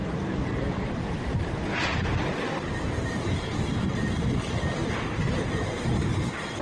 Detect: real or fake real